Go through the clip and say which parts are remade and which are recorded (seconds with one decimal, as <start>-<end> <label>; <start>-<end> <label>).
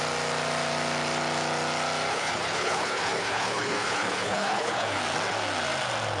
0.0-2.1 recorded; 2.1-5.0 remade; 5.0-6.2 recorded